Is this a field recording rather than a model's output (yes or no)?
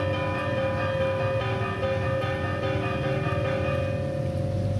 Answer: yes